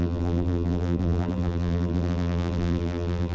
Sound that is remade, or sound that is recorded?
remade